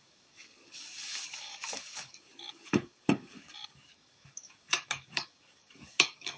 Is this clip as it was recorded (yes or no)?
no